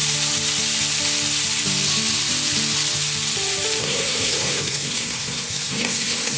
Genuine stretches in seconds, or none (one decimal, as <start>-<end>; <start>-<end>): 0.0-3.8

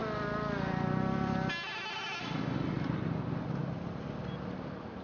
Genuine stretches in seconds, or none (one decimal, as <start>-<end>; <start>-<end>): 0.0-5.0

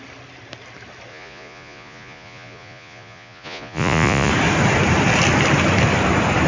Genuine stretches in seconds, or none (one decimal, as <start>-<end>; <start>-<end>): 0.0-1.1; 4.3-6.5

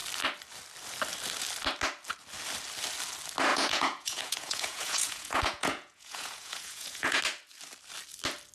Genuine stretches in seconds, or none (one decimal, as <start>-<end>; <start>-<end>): 0.0-3.5; 7.2-8.5

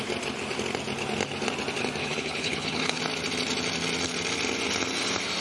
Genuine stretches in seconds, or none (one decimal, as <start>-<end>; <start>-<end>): 0.0-2.0; 3.0-5.4